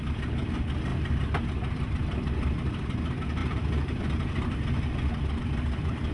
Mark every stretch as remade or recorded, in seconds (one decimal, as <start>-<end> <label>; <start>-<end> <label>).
0.0-6.1 remade